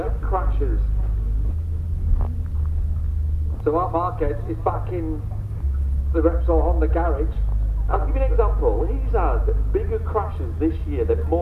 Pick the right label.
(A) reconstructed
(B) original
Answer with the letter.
B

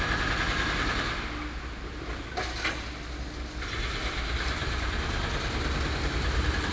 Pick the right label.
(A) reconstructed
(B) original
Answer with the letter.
B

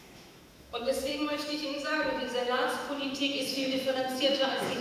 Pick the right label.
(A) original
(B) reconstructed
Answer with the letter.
B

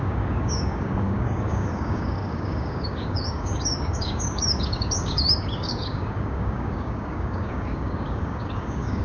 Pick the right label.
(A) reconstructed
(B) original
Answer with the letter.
A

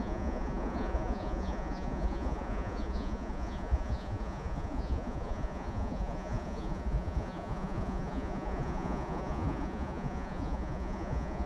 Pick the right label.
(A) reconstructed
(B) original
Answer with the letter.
A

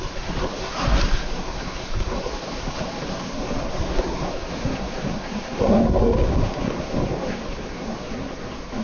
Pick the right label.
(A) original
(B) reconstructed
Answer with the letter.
B